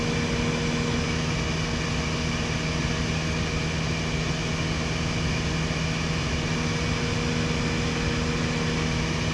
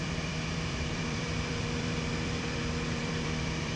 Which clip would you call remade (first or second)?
second